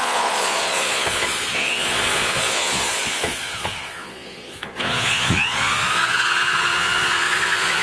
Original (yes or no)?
no